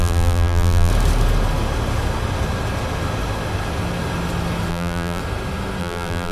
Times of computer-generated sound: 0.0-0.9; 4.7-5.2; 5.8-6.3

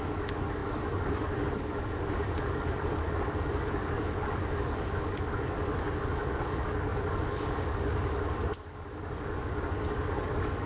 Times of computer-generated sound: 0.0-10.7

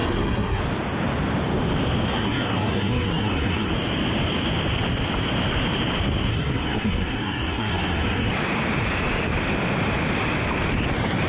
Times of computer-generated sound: 0.0-0.6; 2.1-3.7; 6.3-8.3

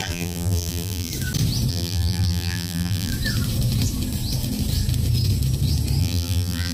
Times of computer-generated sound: 0.0-1.1; 1.7-3.1; 6.0-6.7